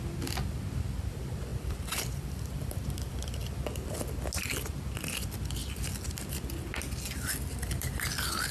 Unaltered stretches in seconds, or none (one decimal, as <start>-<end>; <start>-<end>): 0.0-1.5; 4.0-8.5